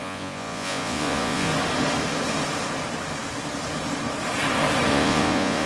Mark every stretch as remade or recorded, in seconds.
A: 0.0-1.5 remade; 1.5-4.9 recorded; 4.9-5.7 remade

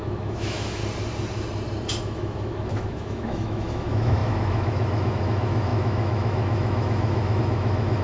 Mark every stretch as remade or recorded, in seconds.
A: 0.0-0.8 remade; 0.8-2.0 recorded; 2.0-8.0 remade

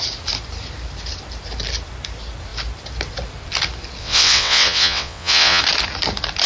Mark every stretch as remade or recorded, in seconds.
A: 0.0-4.0 recorded; 4.0-5.6 remade; 5.6-6.5 recorded

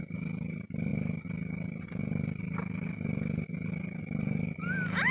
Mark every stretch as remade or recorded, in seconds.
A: 0.0-5.1 recorded

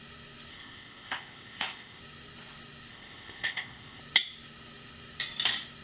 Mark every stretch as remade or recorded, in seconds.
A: 0.0-0.5 recorded; 0.5-2.0 remade; 2.0-2.9 recorded; 2.9-4.0 remade; 4.0-5.8 recorded

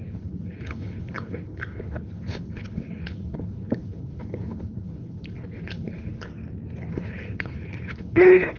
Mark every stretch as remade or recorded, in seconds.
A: 0.0-6.3 remade; 6.3-6.9 recorded; 6.9-8.6 remade

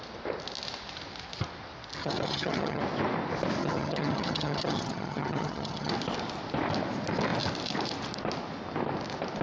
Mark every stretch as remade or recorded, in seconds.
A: 0.0-2.0 recorded; 2.0-2.8 remade; 2.8-3.6 recorded; 3.6-5.9 remade; 5.9-9.4 recorded

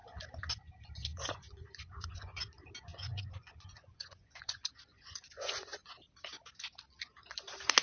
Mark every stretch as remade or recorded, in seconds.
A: 0.0-1.1 recorded; 1.1-2.4 remade; 2.4-2.9 recorded; 2.9-5.9 remade; 5.9-7.8 recorded